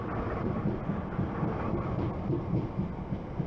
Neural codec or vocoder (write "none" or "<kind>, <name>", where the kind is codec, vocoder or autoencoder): none